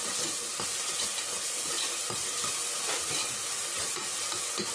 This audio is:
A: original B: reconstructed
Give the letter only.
A